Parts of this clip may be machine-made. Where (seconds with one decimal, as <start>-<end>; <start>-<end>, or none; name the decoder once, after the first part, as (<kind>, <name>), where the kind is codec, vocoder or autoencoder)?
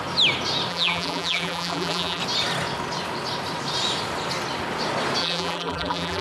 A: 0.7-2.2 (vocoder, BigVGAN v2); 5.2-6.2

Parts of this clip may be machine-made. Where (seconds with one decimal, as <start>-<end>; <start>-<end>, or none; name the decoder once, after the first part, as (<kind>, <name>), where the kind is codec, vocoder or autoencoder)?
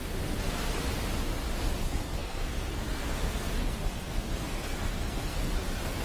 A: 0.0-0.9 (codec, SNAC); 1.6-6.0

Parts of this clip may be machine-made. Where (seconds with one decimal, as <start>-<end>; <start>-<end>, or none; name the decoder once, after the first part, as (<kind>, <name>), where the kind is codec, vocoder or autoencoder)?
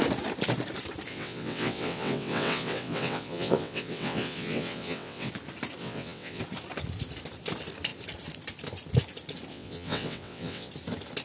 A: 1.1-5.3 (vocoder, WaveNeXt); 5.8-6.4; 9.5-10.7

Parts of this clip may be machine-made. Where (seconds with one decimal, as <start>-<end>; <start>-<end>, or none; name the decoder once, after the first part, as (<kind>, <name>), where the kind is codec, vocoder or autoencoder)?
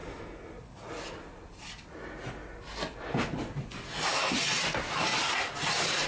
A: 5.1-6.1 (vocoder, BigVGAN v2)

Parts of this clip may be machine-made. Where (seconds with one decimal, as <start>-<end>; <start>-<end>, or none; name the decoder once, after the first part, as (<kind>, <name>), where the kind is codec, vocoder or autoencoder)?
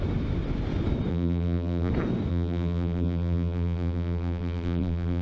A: 1.1-1.9 (vocoder, BigVGAN v2); 2.3-5.2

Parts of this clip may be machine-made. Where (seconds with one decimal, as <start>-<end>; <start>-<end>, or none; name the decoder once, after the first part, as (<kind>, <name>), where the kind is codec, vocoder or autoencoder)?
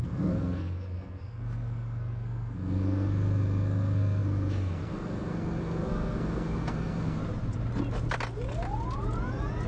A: 0.0-7.2 (codec, SNAC)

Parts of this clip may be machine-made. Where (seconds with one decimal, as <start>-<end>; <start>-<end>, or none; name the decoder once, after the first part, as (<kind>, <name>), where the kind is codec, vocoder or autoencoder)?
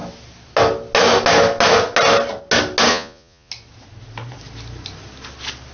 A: 2.9-3.5 (vocoder, Vocos)